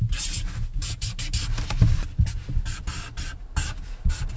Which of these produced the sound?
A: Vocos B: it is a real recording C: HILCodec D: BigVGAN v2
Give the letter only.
B